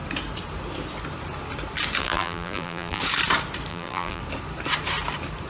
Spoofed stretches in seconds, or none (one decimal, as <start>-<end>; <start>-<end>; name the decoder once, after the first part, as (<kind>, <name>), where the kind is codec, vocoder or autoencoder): 2.0-3.0 (vocoder, BigVGAN v2); 3.7-4.2